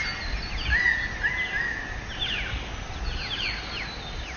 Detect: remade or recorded recorded